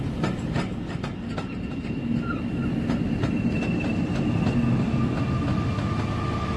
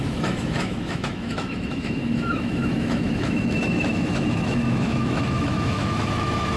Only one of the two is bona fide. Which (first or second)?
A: first